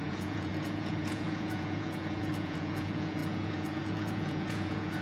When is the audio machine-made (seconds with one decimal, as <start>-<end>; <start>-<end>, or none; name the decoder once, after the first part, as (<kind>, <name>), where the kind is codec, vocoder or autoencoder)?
0.0-5.0 (vocoder, Vocos)